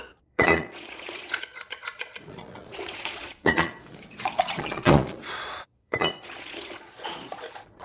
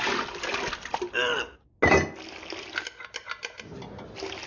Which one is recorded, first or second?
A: second